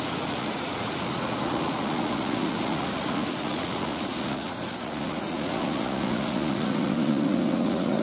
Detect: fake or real fake